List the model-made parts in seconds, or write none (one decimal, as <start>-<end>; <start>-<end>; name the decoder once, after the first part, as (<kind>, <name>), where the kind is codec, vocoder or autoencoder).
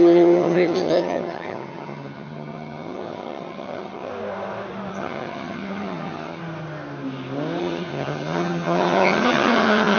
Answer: 0.0-4.1 (vocoder, HiFi-GAN); 4.9-6.4; 7.6-10.0